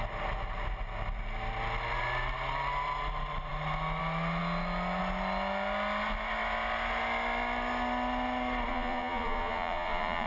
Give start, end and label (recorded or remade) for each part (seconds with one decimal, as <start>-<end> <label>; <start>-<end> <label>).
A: 0.0-8.7 recorded; 8.7-10.3 remade